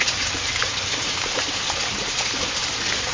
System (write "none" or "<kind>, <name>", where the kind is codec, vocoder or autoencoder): vocoder, BigVGAN v2